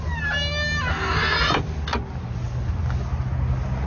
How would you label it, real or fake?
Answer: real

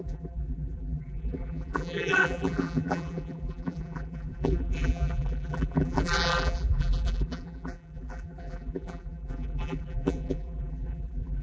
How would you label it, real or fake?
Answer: fake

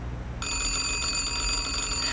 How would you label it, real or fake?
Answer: real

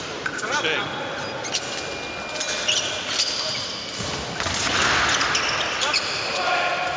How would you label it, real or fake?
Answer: real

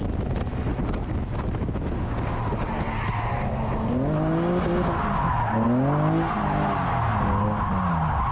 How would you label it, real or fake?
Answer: real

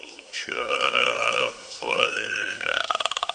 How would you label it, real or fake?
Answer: fake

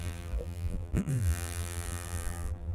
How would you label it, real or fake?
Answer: fake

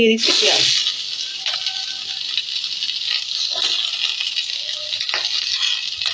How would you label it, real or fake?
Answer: real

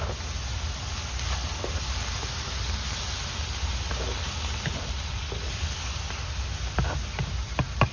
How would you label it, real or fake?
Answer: real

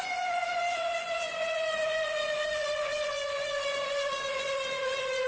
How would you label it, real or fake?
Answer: fake